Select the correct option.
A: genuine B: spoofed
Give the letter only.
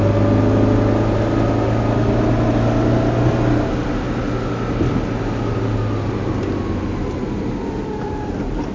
A